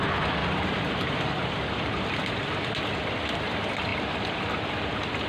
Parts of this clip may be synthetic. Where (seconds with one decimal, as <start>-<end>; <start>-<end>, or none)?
0.4-1.5; 2.2-2.8